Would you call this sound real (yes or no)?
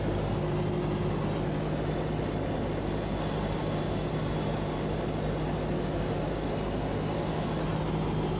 yes